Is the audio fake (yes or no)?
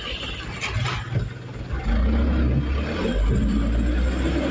no